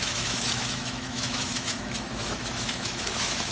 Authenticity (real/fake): fake